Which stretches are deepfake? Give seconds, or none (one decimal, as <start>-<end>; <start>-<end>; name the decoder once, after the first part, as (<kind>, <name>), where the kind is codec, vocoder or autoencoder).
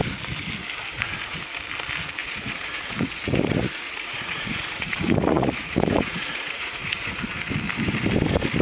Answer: 0.9-1.4 (vocoder, Vocos); 2.2-7.2